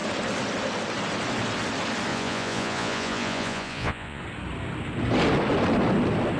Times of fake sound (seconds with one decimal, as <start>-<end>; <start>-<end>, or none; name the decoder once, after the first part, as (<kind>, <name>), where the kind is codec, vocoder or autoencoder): 2.1-4.2 (vocoder, Vocos)